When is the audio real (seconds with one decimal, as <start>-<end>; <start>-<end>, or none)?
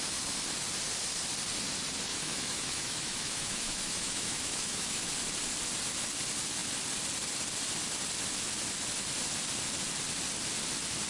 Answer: 0.0-2.1; 5.1-11.1